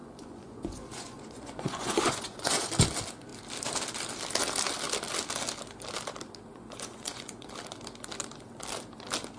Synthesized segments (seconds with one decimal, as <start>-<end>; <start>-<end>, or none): 0.0-2.7; 6.5-7.5